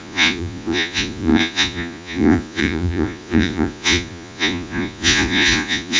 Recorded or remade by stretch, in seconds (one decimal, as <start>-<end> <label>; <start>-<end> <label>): 0.0-6.0 remade